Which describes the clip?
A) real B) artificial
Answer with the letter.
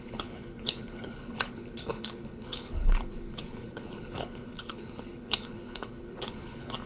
B